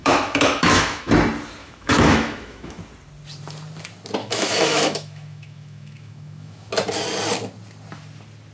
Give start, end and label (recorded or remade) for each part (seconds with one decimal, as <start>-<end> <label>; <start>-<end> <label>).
0.0-1.1 remade; 1.1-1.6 recorded; 1.6-2.8 remade; 2.8-4.2 recorded; 4.2-6.7 remade; 6.7-8.5 recorded